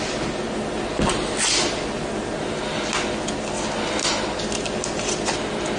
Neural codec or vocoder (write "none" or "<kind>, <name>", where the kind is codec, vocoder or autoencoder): none